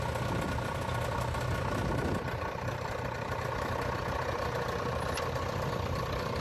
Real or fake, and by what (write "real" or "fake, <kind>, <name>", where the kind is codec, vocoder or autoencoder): real